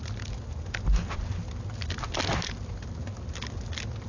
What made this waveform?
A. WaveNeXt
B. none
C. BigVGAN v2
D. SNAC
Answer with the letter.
B